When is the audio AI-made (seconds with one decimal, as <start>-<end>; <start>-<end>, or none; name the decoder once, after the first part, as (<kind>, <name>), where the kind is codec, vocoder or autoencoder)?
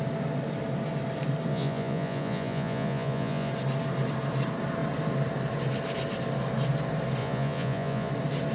1.5-3.5 (vocoder, Vocos); 7.2-8.1